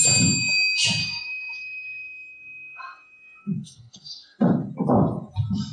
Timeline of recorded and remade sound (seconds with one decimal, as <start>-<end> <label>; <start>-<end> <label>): 0.0-1.0 recorded; 1.0-4.4 remade; 4.4-5.7 recorded